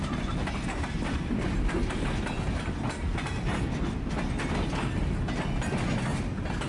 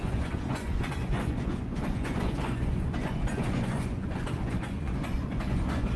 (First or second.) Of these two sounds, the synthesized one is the second